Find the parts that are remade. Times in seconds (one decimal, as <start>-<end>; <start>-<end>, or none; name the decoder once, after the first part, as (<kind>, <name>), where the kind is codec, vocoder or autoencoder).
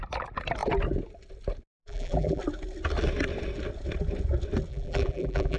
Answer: 1.8-2.4 (vocoder, BigVGAN v2); 4.7-5.6